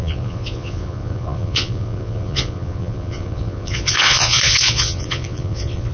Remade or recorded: remade